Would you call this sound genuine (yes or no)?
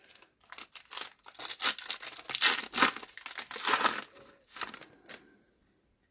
yes